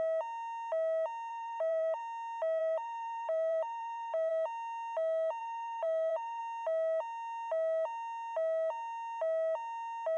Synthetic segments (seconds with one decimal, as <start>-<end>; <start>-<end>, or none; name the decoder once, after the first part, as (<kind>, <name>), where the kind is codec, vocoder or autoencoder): 1.3-2.0 (vocoder, BigVGAN v2); 2.6-4.3; 5.4-6.4